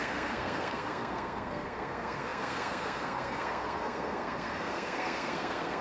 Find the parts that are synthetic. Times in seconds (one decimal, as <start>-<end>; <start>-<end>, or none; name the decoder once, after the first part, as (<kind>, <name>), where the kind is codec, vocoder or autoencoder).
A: 0.0-5.8 (codec, SNAC)